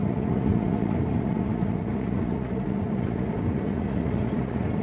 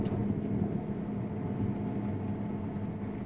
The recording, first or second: second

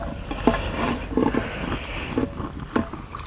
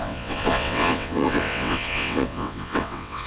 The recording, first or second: first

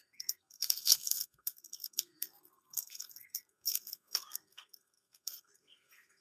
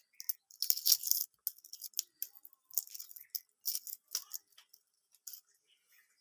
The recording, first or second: second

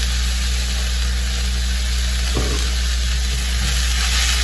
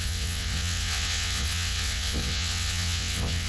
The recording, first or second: first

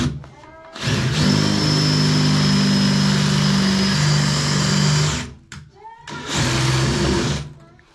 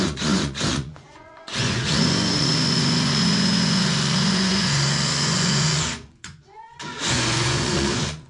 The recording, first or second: first